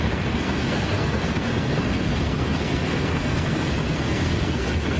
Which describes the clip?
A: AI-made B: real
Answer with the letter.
A